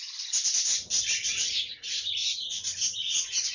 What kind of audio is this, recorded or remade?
recorded